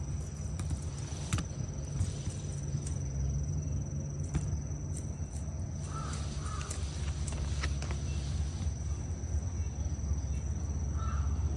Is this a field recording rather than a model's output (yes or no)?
yes